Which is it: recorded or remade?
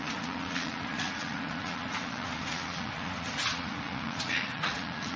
remade